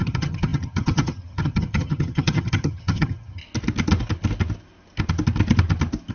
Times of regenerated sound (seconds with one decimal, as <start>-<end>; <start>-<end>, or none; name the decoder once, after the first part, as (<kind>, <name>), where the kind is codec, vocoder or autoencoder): 0.0-3.4 (vocoder, HiFi-GAN)